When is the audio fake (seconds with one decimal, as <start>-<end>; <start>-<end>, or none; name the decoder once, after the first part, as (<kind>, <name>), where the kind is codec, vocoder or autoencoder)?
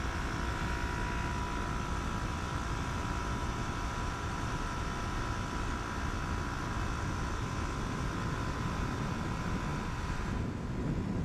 3.2-5.2 (vocoder, BigVGAN v2); 9.7-10.7